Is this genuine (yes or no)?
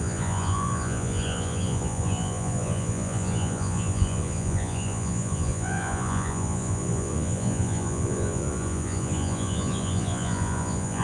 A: no